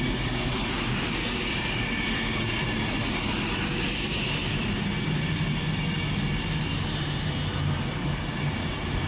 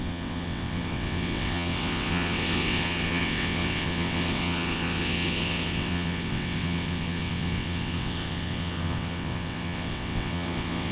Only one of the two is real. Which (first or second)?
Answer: first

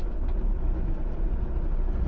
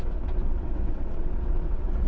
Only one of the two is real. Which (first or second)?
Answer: first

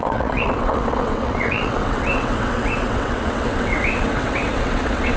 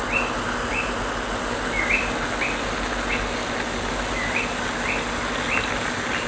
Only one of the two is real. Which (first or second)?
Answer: second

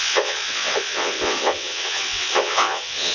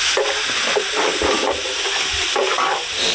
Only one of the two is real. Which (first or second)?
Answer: second